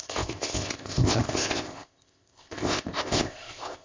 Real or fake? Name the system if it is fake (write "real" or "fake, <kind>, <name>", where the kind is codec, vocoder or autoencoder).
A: fake, codec, ZipCodec